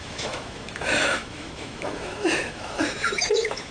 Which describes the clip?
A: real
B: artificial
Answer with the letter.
B